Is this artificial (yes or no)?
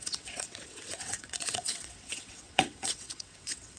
yes